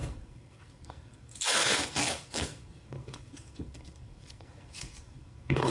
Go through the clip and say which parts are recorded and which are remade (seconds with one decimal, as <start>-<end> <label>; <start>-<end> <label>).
0.0-5.7 remade